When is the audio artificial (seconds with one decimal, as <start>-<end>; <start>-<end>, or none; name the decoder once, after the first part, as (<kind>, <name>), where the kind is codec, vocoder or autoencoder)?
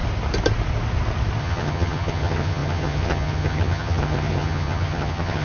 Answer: 1.4-5.4 (vocoder, HiFi-GAN)